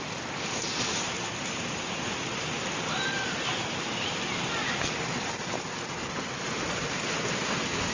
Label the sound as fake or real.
real